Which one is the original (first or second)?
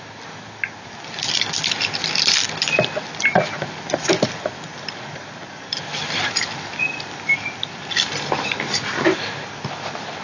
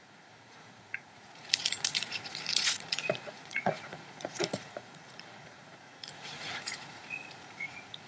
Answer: first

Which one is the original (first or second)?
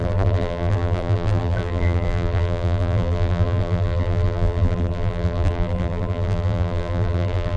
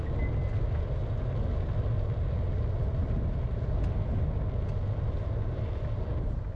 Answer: second